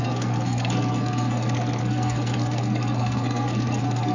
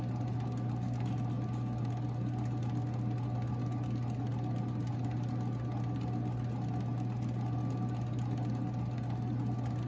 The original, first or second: second